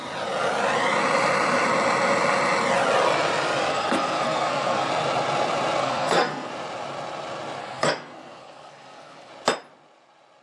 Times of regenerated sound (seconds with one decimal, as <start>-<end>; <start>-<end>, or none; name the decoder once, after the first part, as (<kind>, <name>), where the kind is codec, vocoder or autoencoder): 3.7-4.9 (codec, SNAC); 5.8-6.5; 7.6-9.3